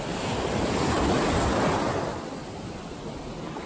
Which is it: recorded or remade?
recorded